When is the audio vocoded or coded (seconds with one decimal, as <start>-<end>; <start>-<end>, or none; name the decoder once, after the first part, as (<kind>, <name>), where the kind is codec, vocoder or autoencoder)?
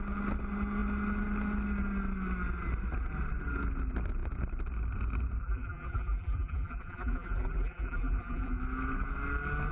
5.4-8.6 (vocoder, BigVGAN v2)